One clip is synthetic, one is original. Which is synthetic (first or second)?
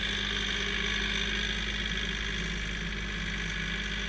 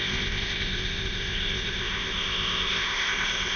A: second